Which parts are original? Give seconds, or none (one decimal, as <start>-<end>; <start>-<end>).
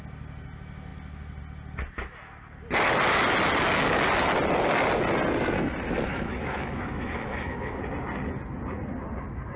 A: 0.0-6.1; 7.8-9.6